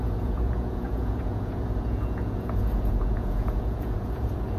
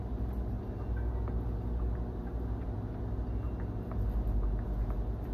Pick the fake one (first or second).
first